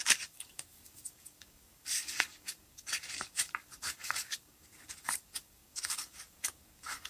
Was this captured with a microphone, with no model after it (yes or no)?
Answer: no